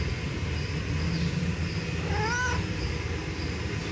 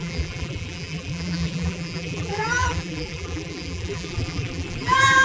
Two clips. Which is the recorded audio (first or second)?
first